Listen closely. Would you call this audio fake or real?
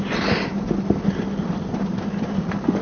real